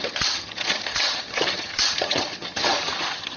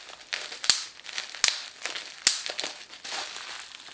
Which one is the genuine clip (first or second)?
second